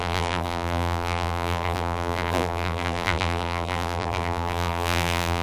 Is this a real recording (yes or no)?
no